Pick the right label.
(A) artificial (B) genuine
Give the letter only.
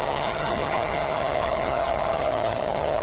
A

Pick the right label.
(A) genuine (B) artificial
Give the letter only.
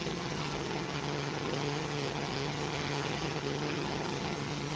B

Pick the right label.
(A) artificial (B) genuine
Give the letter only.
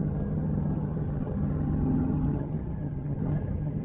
A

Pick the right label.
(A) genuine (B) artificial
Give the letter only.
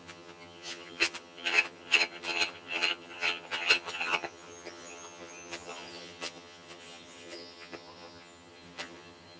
B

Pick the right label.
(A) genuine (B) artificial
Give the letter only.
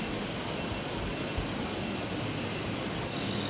A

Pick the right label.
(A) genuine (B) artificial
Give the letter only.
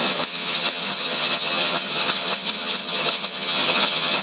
B